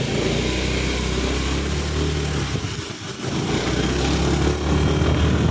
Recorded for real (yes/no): yes